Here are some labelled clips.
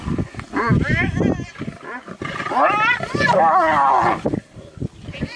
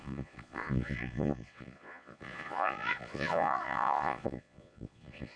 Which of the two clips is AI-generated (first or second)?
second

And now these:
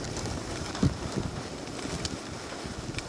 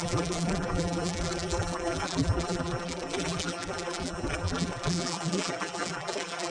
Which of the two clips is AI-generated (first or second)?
second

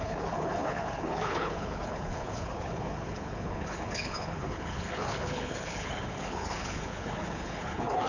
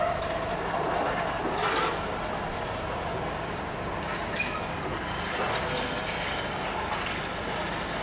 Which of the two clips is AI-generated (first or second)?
first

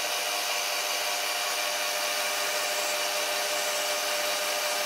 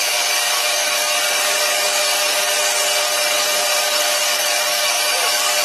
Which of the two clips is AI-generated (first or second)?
second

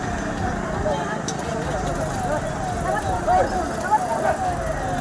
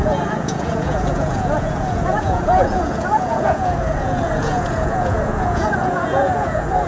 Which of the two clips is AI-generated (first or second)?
second